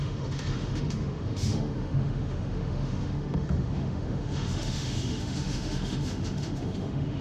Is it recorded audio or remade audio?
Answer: remade